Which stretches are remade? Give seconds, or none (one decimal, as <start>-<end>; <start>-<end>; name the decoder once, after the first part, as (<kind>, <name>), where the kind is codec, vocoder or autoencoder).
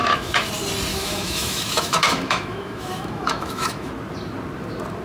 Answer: 0.0-0.5 (autoencoder, DAC-VAE); 0.9-3.9